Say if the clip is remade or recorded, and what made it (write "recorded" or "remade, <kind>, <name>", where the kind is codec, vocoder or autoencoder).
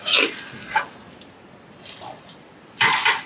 recorded